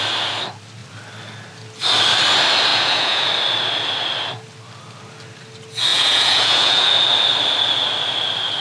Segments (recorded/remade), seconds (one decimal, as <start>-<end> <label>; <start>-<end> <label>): 0.0-2.7 recorded; 2.7-3.3 remade; 3.3-5.9 recorded; 5.9-6.9 remade; 6.9-8.6 recorded

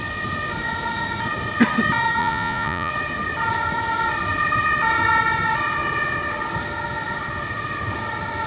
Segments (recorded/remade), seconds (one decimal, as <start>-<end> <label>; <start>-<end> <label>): 0.0-2.2 recorded; 2.2-2.9 remade; 2.9-8.5 recorded